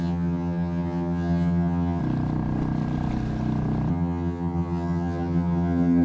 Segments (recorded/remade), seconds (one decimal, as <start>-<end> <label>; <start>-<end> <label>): 0.0-2.0 remade; 2.0-3.9 recorded; 3.9-6.0 remade